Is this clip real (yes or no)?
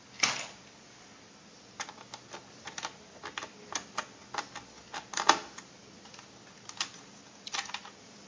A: yes